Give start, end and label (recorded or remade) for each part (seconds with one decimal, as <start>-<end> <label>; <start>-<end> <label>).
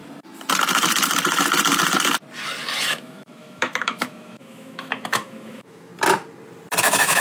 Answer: 0.0-2.8 recorded; 2.8-5.9 remade; 5.9-6.8 recorded; 6.8-7.2 remade